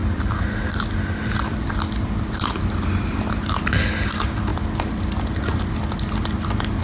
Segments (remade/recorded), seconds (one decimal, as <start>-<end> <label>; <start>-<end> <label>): 0.0-6.8 recorded